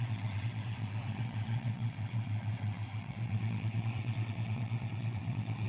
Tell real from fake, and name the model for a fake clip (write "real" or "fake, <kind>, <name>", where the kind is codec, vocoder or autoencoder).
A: fake, vocoder, WaveNeXt